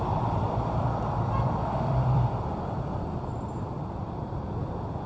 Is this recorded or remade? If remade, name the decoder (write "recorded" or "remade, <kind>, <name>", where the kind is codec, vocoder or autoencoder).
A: remade, vocoder, BigVGAN v2